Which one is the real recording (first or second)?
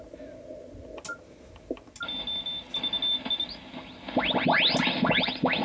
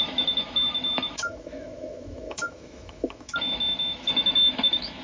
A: first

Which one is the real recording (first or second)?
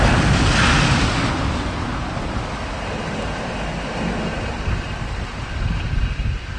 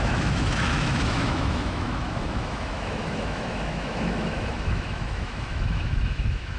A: first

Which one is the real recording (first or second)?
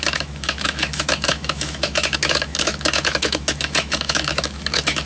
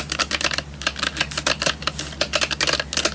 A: second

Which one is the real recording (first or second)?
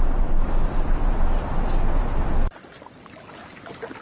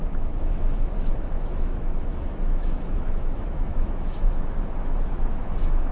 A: first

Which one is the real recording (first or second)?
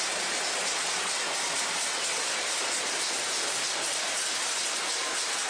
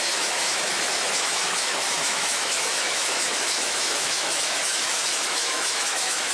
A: first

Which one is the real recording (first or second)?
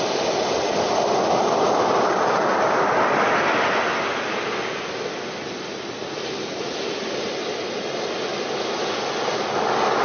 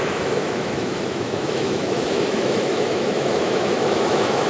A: first